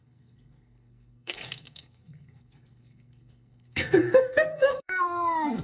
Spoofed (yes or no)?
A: yes